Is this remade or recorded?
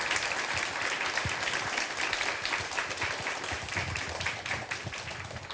recorded